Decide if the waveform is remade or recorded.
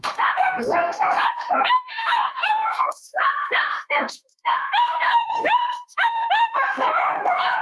remade